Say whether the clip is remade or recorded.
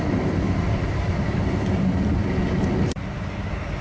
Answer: remade